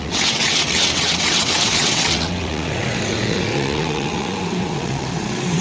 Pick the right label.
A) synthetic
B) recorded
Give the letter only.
A